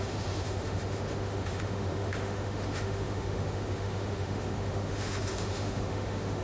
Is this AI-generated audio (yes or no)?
yes